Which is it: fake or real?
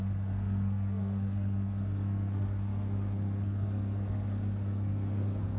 fake